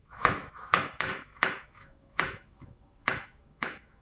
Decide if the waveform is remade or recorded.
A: remade